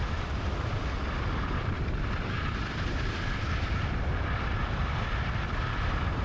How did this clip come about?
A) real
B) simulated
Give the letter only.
B